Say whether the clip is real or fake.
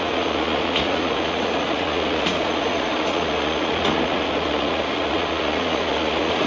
fake